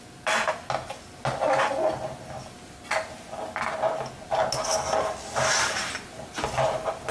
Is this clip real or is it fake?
real